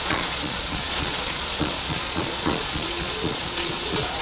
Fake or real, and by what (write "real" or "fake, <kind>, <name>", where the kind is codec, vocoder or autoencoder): fake, vocoder, Vocos